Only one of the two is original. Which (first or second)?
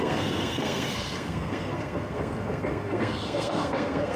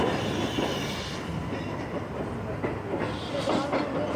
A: second